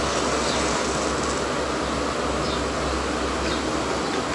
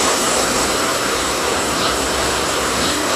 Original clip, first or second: first